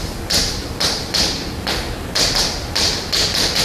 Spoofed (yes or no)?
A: yes